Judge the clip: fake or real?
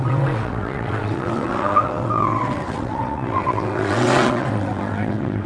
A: fake